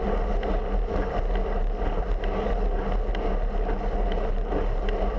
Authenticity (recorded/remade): recorded